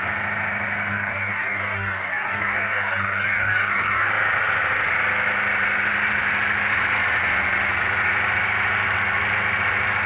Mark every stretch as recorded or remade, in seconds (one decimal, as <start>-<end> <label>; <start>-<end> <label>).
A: 0.0-0.9 recorded; 0.9-4.1 remade; 4.1-10.1 recorded